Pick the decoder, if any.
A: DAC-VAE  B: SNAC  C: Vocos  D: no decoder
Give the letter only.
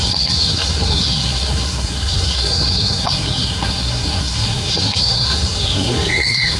B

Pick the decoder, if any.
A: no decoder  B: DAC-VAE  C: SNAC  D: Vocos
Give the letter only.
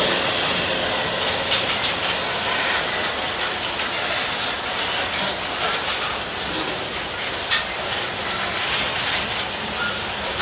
A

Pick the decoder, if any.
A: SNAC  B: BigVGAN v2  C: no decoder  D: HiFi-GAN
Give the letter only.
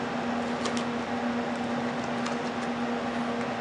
C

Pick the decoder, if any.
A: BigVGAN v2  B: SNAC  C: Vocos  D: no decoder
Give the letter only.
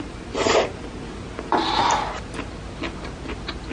D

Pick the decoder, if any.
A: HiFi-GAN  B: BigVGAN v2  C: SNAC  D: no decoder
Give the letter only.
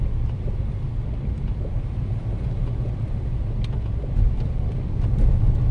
D